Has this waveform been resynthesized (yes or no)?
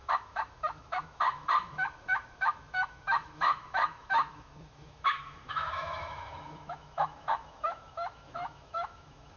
yes